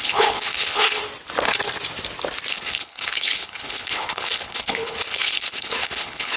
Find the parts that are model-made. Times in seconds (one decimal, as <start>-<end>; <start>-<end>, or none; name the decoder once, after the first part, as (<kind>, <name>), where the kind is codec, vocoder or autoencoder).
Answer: 0.0-1.0 (codec, HILCodec); 2.5-6.4